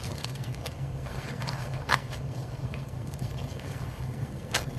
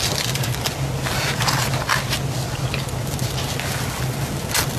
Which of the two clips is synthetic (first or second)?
first